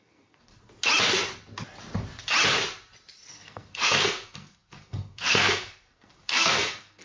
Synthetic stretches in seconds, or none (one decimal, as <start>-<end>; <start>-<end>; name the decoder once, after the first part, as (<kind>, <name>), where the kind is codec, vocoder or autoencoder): 0.0-0.5 (codec, SNAC); 3.3-7.0